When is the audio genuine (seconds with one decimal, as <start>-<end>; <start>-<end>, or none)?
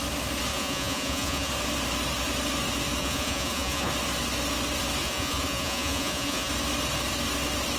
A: 0.0-0.5; 1.5-3.0; 3.9-5.0; 6.5-7.8